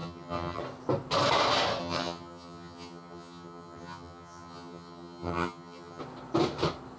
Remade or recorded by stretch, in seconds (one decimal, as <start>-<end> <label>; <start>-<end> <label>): 0.0-0.6 remade; 0.6-1.8 recorded; 1.8-6.0 remade; 6.0-7.0 recorded